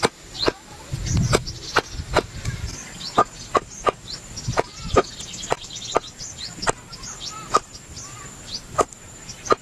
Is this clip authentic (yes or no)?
yes